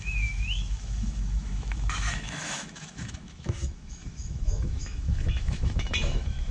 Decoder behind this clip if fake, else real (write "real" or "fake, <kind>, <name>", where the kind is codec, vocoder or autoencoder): fake, autoencoder, DAC-VAE